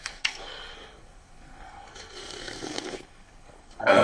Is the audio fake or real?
fake